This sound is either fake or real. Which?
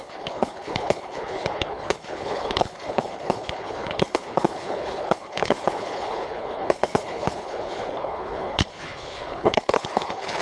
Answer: fake